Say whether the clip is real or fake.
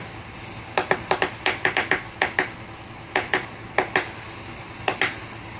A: real